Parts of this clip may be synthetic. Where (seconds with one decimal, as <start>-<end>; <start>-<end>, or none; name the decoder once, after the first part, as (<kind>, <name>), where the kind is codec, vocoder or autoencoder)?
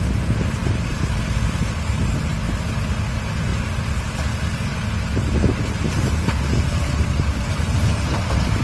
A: none